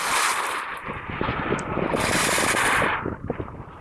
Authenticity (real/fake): real